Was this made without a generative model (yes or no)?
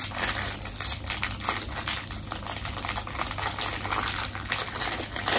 yes